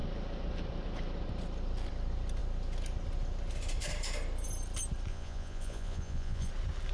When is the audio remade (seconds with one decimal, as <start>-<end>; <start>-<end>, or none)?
5.1-6.5